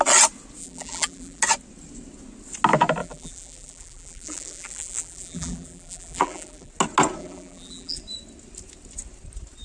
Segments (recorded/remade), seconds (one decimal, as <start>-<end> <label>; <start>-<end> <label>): 0.0-0.6 recorded; 0.6-1.4 remade; 1.4-3.0 recorded; 3.0-6.7 remade; 6.7-7.2 recorded; 7.2-8.0 remade; 8.0-9.6 recorded